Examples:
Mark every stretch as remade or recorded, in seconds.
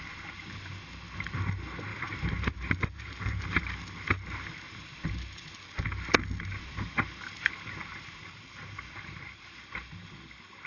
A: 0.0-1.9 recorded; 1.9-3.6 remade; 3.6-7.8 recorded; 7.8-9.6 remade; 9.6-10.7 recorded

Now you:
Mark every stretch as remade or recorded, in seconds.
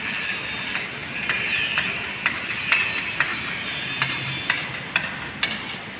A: 0.0-1.0 recorded; 1.0-2.4 remade; 2.4-3.3 recorded; 3.3-4.7 remade; 4.7-6.0 recorded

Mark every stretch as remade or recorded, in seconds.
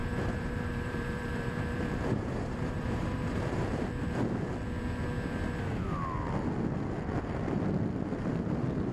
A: 0.0-3.7 remade; 3.7-8.9 recorded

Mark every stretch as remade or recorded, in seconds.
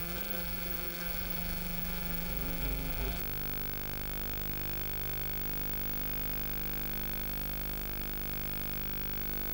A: 0.0-3.2 remade; 3.2-9.5 recorded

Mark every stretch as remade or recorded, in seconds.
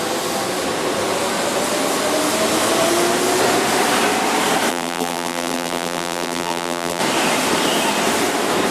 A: 0.0-4.7 recorded; 4.7-7.0 remade; 7.0-8.7 recorded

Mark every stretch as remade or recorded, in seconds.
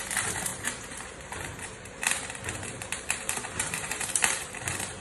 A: 0.0-5.0 remade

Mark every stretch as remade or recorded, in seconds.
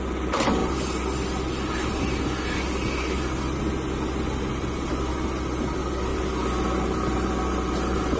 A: 0.0-8.2 recorded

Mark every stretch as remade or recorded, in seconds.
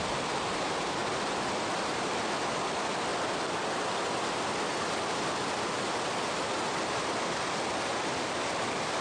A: 0.0-9.0 recorded